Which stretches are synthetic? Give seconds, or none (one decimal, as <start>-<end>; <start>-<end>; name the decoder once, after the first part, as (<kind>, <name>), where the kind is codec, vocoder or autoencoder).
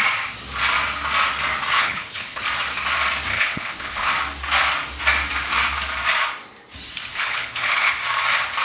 1.7-2.4 (codec, HILCodec); 3.3-4.1; 7.1-7.9